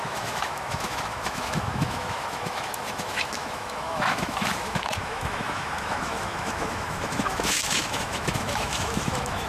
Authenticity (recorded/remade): remade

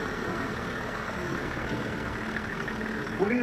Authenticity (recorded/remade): remade